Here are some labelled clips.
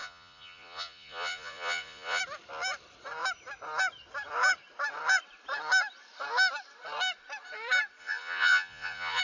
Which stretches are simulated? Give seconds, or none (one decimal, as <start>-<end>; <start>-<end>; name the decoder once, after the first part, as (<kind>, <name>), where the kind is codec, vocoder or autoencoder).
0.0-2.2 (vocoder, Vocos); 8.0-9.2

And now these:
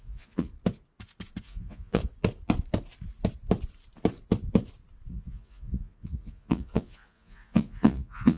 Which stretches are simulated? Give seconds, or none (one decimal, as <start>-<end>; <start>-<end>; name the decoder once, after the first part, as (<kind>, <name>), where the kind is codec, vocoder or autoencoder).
0.0-0.5 (vocoder, Vocos); 1.4-2.0; 5.1-8.4

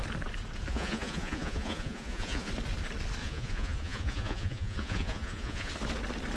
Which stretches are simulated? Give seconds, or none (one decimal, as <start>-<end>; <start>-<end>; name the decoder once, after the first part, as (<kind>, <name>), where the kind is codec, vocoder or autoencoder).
0.7-2.5 (vocoder, Vocos); 3.2-5.7